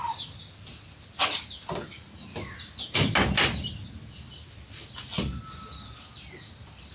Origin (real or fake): real